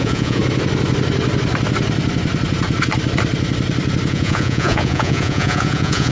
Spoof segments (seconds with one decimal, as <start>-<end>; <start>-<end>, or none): 0.0-0.4; 4.1-6.1